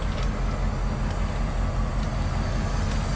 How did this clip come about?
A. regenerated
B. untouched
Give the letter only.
B